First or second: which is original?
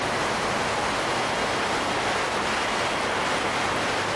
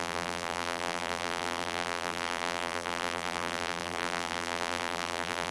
first